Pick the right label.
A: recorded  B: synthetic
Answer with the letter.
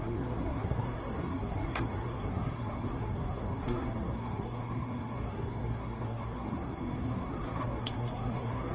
B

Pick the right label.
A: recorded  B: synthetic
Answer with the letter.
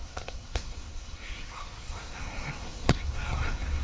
B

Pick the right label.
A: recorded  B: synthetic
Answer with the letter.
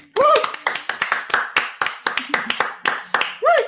A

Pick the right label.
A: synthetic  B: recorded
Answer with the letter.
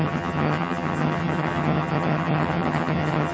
A